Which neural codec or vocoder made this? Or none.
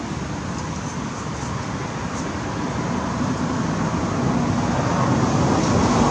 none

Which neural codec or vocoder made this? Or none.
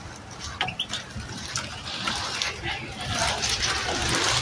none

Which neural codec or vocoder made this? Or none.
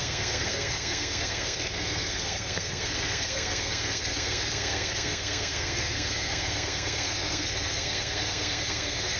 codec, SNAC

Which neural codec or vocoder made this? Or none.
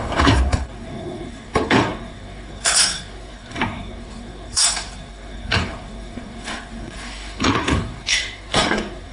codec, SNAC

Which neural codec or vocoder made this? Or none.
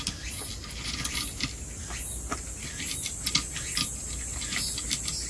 none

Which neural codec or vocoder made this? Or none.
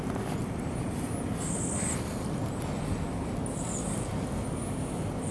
none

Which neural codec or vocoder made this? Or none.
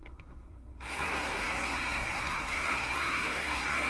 codec, SNAC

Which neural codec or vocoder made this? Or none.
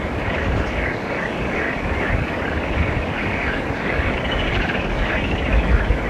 codec, DAC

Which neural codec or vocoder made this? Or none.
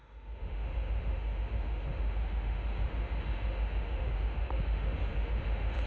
autoencoder, DAC-VAE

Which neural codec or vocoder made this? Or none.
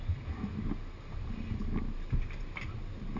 none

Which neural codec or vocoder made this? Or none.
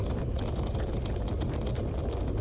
none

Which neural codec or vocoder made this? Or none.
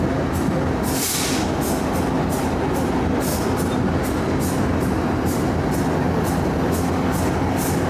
none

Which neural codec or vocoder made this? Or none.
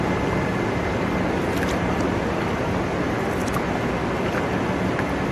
none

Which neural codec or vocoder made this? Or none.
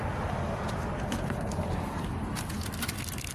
none